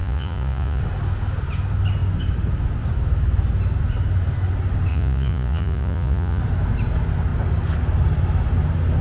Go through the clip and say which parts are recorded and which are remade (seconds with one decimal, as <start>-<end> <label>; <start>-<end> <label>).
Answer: 0.0-0.8 remade; 0.8-4.9 recorded; 4.9-6.4 remade; 6.4-9.0 recorded